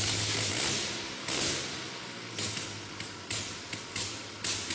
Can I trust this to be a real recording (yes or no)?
yes